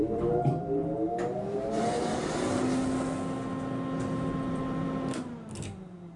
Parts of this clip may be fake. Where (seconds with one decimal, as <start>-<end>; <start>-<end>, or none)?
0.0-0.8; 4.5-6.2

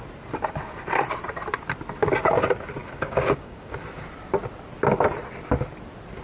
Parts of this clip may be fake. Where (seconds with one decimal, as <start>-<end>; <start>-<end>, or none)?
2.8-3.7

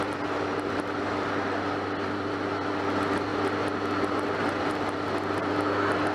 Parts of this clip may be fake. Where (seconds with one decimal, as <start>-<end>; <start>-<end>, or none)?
none

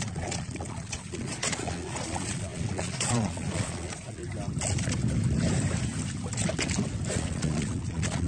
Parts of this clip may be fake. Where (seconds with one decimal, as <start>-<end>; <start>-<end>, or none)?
0.0-4.2; 7.1-8.3